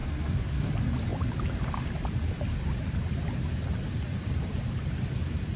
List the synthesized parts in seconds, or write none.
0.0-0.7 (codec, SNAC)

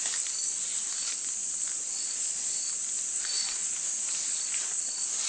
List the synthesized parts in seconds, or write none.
1.4-4.6 (vocoder, BigVGAN v2)

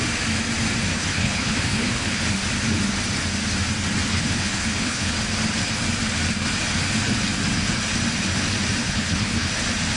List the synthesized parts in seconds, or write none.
0.9-2.2 (codec, HILCodec); 4.1-5.1; 8.8-9.5

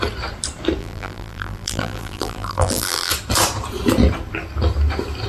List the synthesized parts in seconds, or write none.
0.8-3.1 (vocoder, BigVGAN v2)

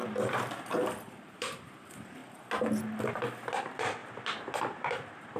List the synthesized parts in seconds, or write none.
0.0-2.2 (vocoder, BigVGAN v2); 3.1-4.0; 4.6-5.4

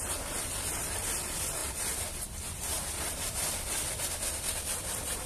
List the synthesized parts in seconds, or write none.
none

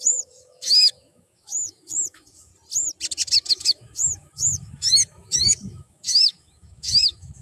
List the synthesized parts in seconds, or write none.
0.0-2.5 (autoencoder, DAC-VAE); 3.5-7.4

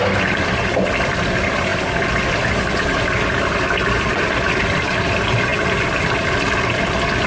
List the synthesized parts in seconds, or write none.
none